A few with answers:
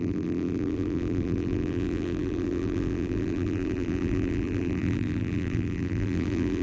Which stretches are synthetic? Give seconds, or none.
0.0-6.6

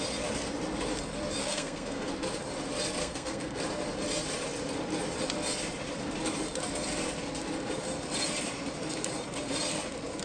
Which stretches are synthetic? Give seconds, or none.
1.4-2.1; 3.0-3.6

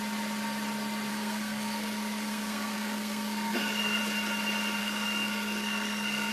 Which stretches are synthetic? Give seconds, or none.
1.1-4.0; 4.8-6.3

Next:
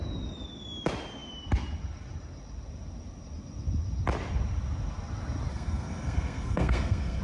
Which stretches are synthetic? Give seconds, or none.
5.5-7.2

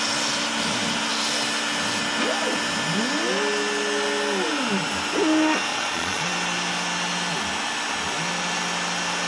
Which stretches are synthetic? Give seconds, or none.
5.7-6.3